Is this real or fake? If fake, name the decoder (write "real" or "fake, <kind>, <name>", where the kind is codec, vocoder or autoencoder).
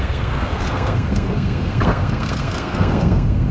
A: fake, codec, SNAC